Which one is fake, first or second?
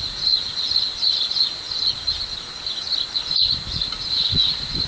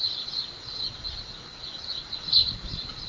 second